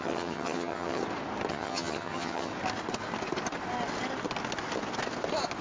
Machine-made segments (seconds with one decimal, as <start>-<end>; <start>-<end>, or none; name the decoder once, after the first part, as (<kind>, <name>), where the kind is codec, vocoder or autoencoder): 0.0-1.0 (vocoder, HiFi-GAN); 1.5-2.5